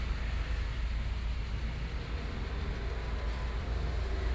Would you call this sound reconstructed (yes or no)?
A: no